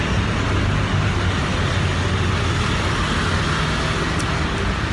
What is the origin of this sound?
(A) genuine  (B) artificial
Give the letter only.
A